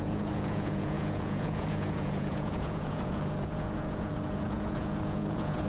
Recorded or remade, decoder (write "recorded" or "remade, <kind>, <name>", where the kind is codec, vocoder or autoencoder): remade, vocoder, Vocos